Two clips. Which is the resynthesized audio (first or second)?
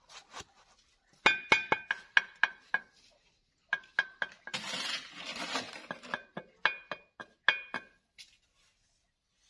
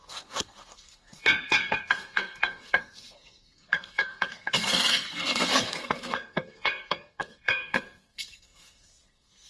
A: second